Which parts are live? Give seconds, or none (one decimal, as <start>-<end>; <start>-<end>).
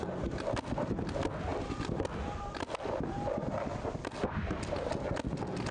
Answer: 0.0-5.7